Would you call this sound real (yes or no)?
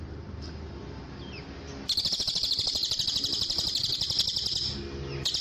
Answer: yes